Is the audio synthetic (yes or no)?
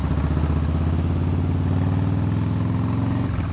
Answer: no